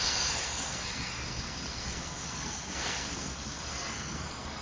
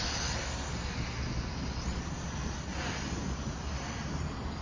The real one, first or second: second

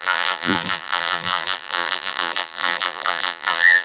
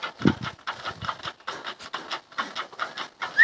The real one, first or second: second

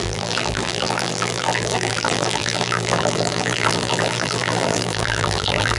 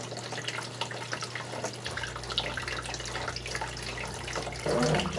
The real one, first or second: second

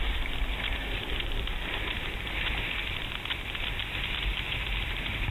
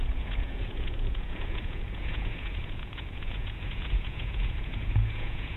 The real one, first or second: first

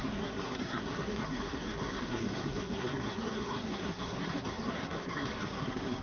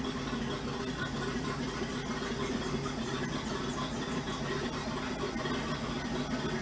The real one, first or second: second